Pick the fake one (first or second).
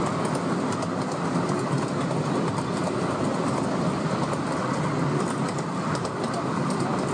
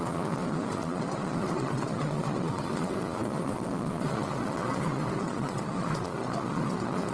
second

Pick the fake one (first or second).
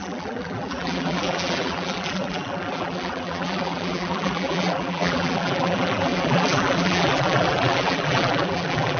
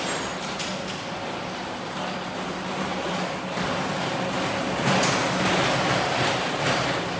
first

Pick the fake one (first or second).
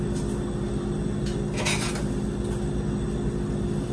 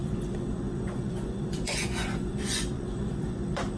second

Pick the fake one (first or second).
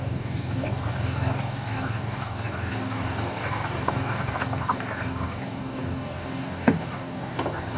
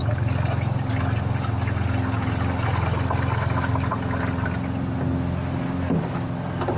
first